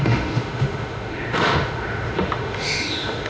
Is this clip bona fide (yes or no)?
no